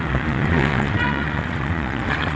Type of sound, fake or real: fake